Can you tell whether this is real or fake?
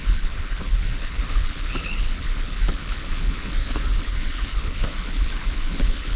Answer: fake